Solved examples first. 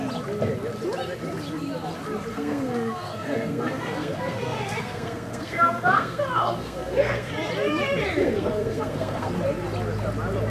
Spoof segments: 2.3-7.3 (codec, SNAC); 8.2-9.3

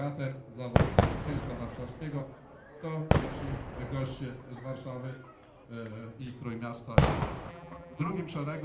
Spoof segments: 7.5-8.1 (vocoder, BigVGAN v2)

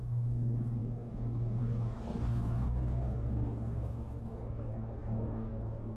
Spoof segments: 0.0-6.0 (codec, DAC)

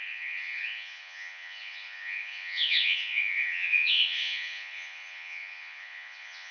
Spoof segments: 0.0-6.5 (vocoder, Vocos)